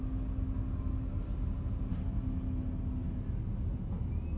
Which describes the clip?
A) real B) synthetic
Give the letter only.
A